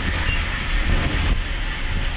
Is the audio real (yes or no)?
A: yes